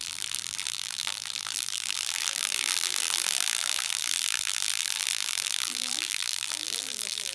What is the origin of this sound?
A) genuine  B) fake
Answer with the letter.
B